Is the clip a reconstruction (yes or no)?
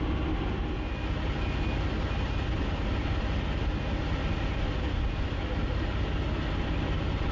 no